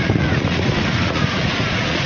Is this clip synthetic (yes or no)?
yes